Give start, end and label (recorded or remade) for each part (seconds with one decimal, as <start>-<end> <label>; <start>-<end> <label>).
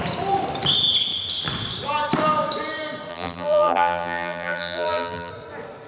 0.0-3.1 recorded; 3.1-5.3 remade; 5.3-5.9 recorded